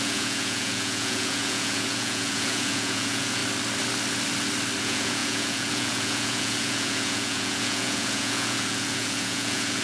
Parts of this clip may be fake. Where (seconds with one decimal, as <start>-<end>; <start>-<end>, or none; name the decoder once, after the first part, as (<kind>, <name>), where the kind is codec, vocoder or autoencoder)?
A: 0.0-3.4 (vocoder, Vocos); 4.8-9.8